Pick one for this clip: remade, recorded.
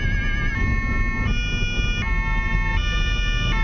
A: recorded